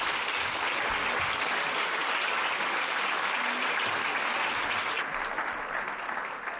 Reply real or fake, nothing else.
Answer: real